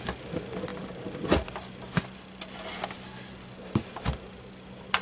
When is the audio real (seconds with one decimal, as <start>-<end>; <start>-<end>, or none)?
0.0-5.0